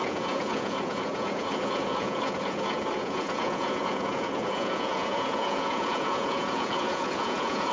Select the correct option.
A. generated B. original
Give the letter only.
A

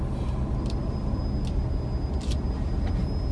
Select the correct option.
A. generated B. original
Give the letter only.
B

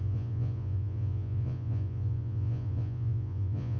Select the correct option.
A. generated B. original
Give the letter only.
A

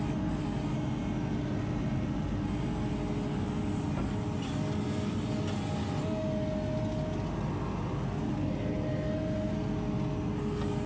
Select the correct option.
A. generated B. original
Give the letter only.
B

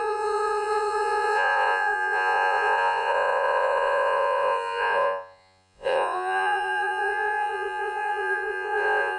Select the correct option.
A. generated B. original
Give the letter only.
A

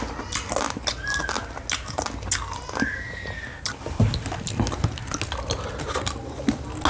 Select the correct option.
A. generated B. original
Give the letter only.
B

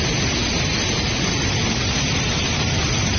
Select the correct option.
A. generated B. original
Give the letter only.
B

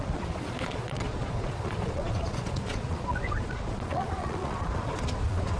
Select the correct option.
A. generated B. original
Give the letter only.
A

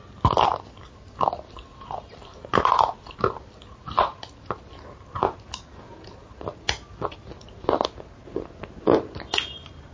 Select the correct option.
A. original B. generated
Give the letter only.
A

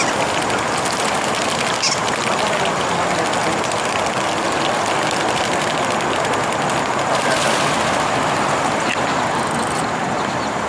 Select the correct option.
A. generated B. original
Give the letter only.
B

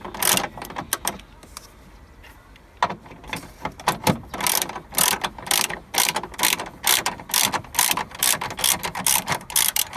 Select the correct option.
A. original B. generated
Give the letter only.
A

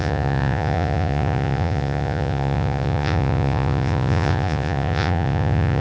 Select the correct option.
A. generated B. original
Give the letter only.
A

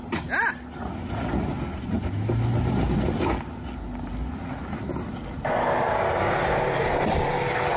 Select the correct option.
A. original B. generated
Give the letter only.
A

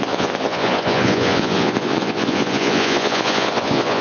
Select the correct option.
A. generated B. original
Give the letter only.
A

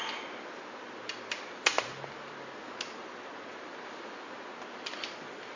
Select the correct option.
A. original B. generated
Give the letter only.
A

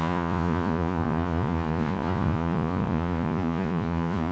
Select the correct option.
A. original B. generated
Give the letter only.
B